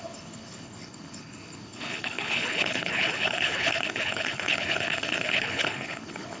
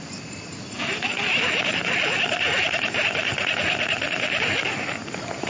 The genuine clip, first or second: second